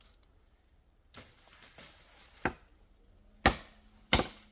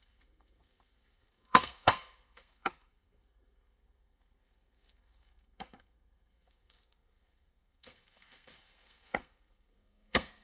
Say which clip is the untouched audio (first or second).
first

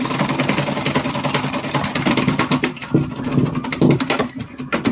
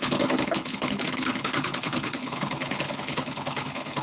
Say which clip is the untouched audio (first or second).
first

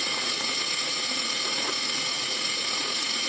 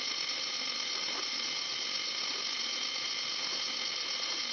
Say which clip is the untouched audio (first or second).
second